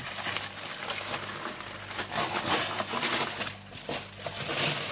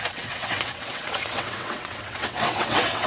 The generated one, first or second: second